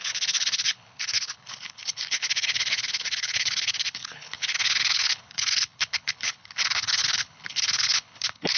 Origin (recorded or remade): remade